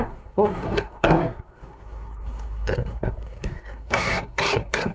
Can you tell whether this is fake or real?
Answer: fake